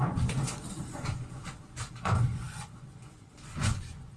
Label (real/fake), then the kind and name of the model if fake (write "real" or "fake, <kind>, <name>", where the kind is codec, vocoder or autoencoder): fake, vocoder, Vocos